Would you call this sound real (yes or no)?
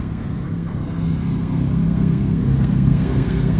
no